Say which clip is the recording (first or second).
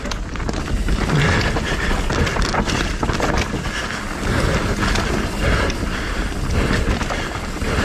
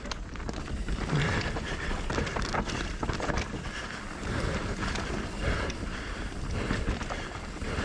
first